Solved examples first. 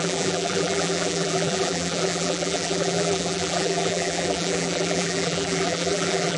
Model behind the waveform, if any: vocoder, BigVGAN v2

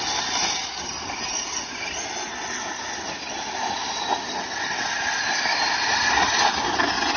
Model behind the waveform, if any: none